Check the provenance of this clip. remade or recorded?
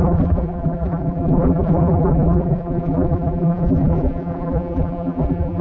remade